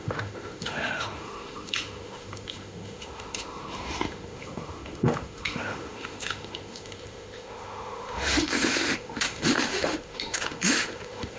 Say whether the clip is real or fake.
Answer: fake